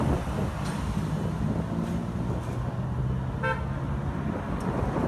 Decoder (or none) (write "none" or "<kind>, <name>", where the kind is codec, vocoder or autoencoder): none